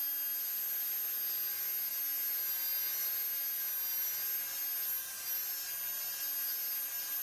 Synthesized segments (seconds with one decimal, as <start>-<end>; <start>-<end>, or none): none